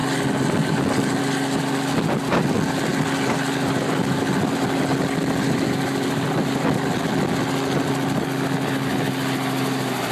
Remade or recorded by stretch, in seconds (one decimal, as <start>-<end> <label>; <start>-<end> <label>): 0.0-10.1 recorded